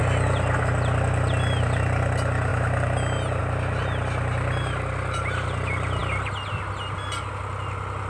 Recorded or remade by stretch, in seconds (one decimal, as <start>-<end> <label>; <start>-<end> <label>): 0.0-8.1 recorded